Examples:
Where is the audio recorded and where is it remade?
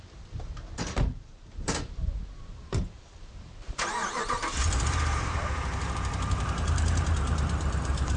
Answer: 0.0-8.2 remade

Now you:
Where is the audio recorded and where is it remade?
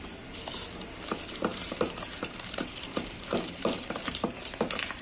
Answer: 0.0-1.5 recorded; 1.5-4.5 remade; 4.5-5.0 recorded